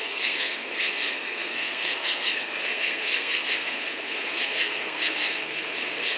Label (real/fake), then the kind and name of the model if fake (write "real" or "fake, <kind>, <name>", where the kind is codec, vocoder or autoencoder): fake, codec, SNAC